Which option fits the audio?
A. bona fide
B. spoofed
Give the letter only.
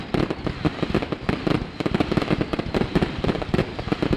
A